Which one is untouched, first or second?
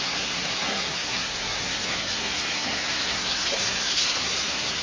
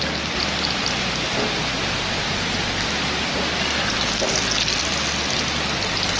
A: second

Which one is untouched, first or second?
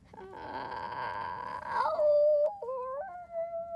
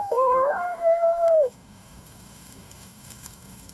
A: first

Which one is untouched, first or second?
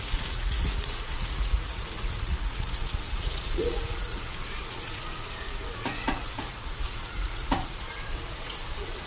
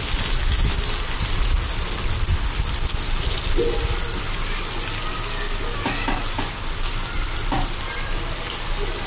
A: second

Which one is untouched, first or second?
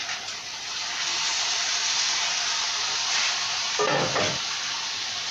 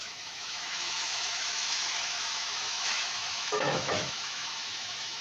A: first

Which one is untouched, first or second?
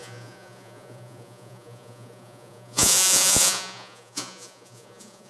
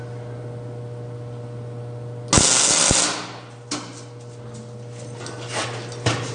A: second